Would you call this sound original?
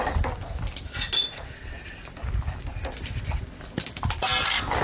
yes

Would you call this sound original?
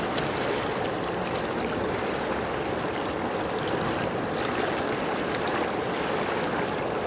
yes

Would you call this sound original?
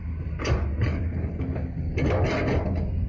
yes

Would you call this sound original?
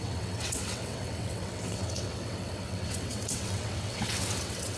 no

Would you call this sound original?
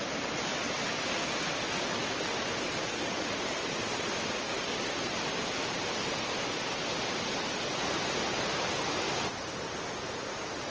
yes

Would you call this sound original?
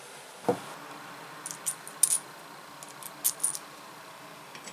yes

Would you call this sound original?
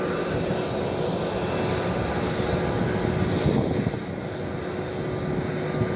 yes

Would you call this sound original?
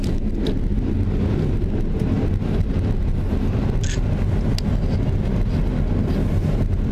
yes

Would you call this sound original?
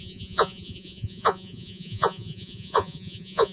no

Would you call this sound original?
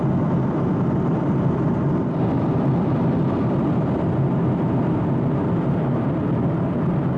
yes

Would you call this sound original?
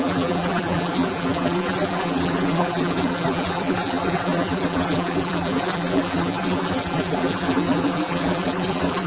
no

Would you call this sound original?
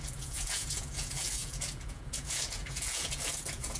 no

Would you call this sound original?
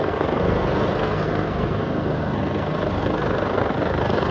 no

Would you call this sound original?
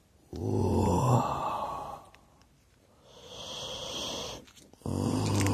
yes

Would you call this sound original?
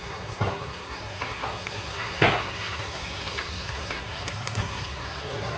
no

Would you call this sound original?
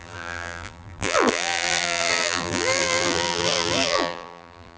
no